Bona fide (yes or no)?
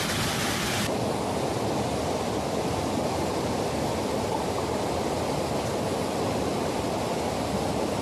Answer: yes